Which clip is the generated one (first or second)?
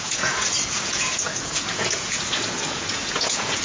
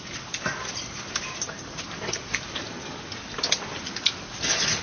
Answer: first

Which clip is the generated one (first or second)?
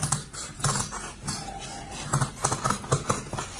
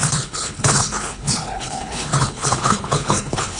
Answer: second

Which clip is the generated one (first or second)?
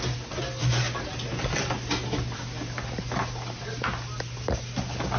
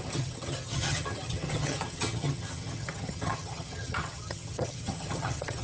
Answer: second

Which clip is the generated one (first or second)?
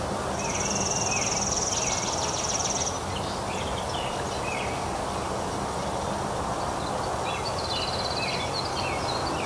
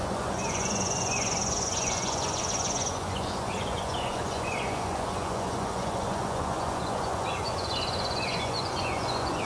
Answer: second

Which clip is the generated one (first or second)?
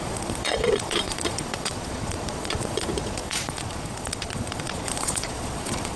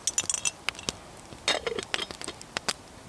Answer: first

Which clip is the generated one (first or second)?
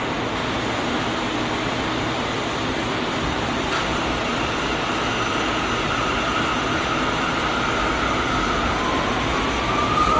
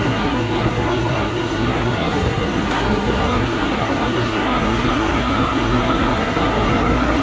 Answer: second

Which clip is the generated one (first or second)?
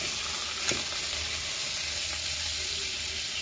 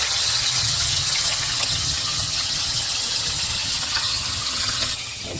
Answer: second